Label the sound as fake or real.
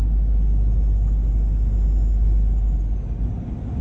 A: real